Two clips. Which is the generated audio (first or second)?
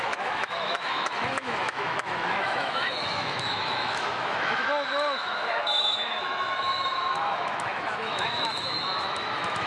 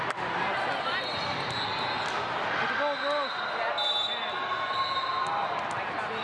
first